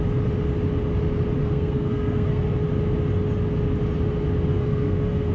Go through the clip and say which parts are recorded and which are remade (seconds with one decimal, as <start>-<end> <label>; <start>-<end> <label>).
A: 0.0-1.4 recorded; 1.4-2.5 remade; 2.5-4.5 recorded; 4.5-5.3 remade